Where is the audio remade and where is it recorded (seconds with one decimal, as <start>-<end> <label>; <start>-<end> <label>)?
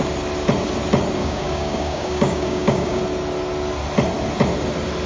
0.0-1.2 recorded; 1.2-3.0 remade; 3.0-5.1 recorded